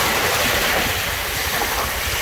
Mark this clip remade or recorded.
recorded